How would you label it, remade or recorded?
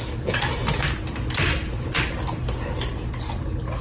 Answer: recorded